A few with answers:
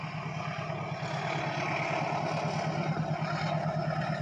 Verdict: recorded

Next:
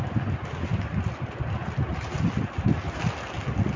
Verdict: recorded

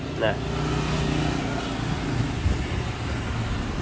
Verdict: recorded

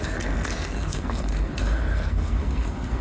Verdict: remade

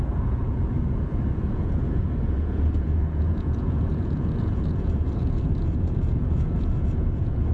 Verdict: remade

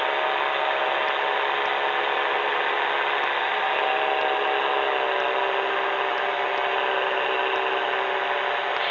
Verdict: recorded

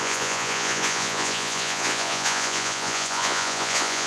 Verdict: remade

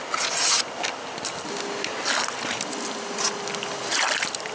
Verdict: recorded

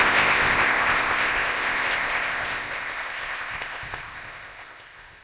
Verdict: remade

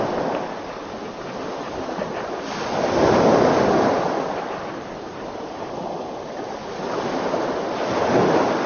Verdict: recorded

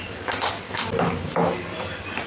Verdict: recorded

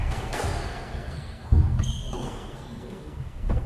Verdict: remade